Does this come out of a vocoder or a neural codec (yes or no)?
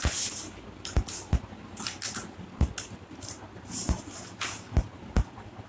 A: no